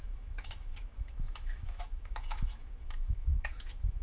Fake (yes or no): yes